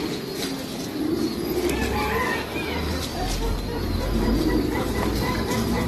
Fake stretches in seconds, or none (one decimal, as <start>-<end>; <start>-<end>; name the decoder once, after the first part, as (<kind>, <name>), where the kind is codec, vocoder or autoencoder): 3.7-5.9 (vocoder, BigVGAN v2)